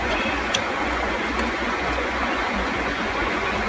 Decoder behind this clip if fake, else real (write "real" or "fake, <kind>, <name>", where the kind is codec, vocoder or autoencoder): fake, vocoder, Vocos